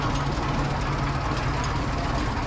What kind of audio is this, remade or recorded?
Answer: recorded